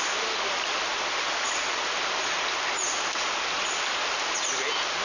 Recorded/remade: recorded